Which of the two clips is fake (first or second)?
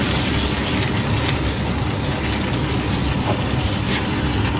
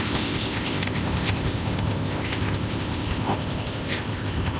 second